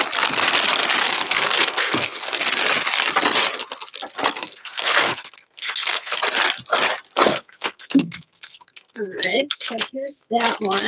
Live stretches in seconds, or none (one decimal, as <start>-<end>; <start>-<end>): 0.0-1.0; 2.3-4.4; 6.2-7.3; 10.3-10.9